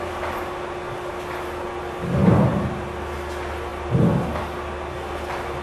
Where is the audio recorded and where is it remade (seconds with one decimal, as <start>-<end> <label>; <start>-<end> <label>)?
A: 0.0-5.6 recorded